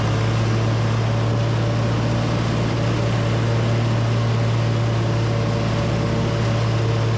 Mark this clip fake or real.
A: real